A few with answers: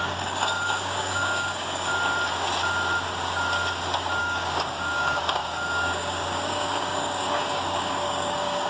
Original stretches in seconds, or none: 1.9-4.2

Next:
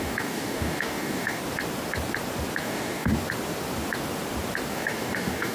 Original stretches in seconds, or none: 1.4-2.6; 3.1-4.7

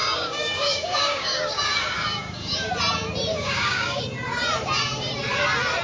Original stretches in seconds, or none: 2.7-3.3; 4.0-5.8

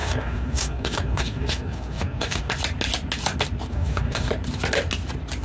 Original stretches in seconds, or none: 2.5-3.7; 4.3-5.4

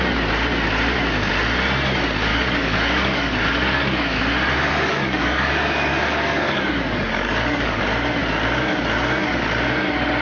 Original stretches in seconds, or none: 0.0-2.3; 4.2-4.7; 7.8-10.2

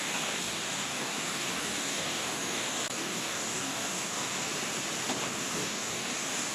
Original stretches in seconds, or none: 4.5-5.4